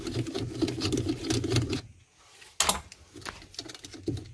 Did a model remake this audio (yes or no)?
no